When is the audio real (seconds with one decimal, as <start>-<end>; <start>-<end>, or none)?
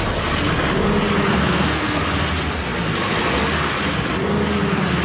0.0-1.3; 2.0-5.0